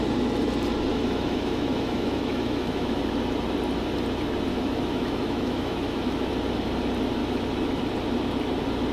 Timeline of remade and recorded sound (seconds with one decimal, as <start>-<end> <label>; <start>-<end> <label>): 0.0-0.9 recorded; 0.9-3.0 remade; 3.0-4.5 recorded; 4.5-6.3 remade; 6.3-7.2 recorded; 7.2-7.8 remade; 7.8-8.9 recorded